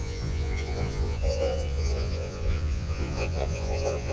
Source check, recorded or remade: remade